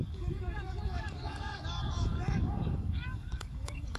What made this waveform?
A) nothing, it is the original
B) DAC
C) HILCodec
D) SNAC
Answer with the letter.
B